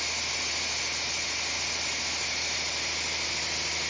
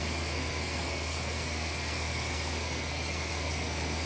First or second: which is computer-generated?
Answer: second